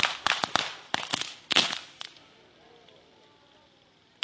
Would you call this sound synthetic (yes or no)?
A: no